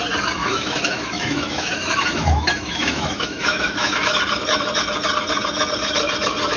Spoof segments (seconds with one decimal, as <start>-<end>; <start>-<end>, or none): 0.4-4.2